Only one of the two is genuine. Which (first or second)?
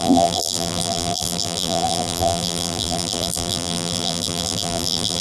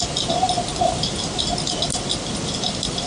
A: second